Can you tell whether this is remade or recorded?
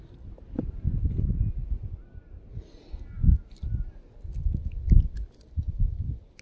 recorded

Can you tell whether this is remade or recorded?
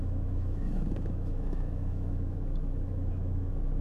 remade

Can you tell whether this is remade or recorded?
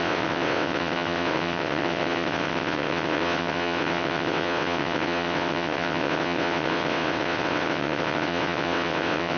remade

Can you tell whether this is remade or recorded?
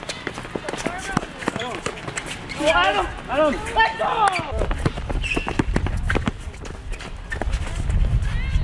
recorded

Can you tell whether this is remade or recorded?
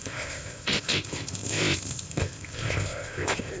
remade